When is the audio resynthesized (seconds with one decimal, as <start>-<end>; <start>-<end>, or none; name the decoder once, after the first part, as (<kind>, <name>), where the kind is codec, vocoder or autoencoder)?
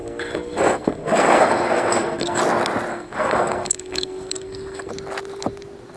0.0-2.4 (codec, SNAC); 2.9-4.9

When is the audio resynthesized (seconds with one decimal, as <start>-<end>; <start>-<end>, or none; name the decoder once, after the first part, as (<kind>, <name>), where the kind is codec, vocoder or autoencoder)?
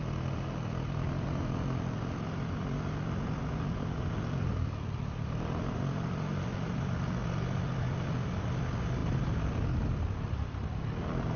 none